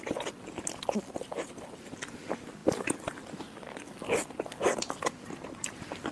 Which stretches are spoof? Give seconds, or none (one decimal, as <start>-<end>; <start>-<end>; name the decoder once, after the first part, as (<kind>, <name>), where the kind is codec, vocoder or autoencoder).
none